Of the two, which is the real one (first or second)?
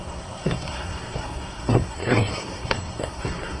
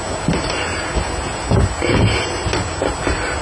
second